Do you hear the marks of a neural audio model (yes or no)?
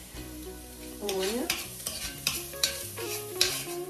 yes